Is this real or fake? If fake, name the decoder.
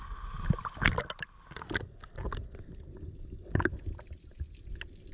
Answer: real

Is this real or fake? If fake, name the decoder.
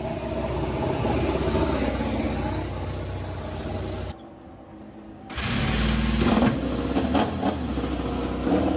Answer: real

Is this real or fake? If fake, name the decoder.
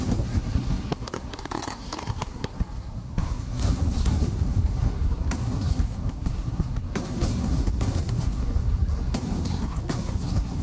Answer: fake, codec, SNAC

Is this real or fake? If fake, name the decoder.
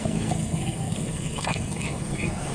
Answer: fake, codec, SNAC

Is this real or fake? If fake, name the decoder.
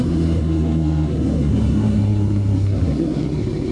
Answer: fake, codec, SNAC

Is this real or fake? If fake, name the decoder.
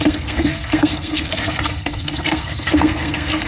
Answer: fake, codec, SNAC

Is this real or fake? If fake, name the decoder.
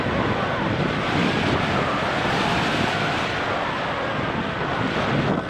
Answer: real